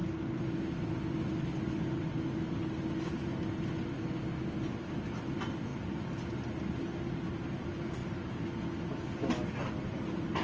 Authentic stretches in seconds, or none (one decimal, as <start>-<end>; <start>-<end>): 0.0-10.4